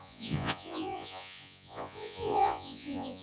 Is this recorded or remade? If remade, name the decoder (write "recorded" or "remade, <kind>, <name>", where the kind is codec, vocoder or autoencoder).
remade, vocoder, Vocos